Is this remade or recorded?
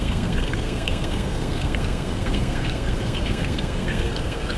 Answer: remade